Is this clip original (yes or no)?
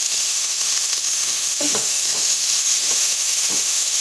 no